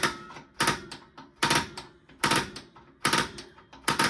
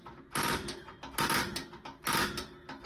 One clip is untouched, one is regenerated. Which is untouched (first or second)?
second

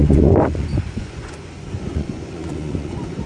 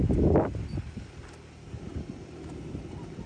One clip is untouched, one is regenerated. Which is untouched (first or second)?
second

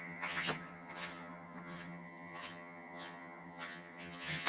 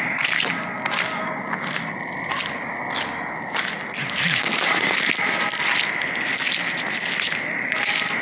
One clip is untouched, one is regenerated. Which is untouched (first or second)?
second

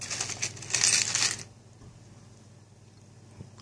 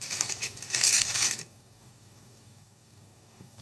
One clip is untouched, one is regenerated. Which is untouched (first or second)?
first